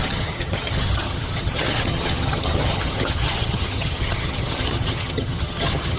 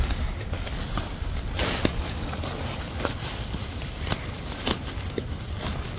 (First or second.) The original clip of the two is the second